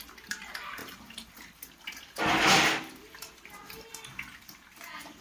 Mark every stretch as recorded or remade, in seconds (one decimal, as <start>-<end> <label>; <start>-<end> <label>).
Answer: 0.0-5.2 recorded